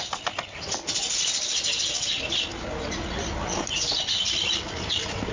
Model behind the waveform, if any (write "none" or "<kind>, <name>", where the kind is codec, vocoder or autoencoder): none